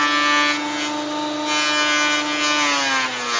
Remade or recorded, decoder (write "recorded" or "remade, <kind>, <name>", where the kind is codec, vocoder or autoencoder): recorded